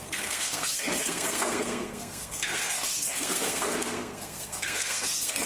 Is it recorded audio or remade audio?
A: remade